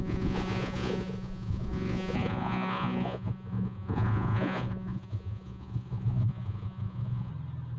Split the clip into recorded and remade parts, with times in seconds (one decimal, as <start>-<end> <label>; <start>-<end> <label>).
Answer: 0.0-7.3 remade; 7.3-7.8 recorded